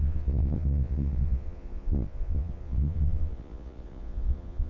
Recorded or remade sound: remade